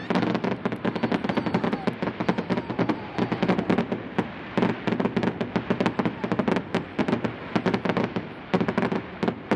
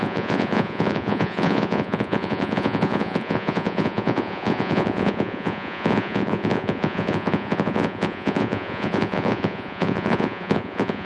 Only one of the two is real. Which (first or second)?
first